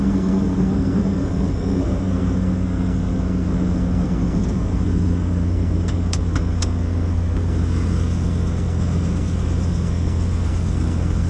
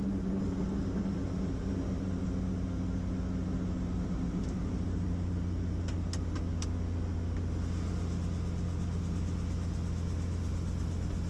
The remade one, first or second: first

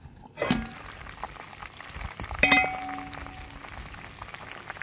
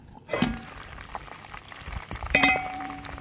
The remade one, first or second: second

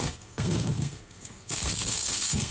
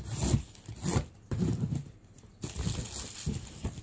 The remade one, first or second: first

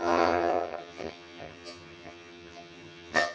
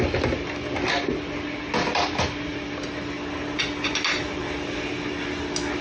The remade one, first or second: first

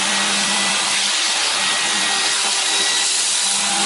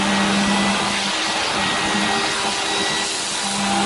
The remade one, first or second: first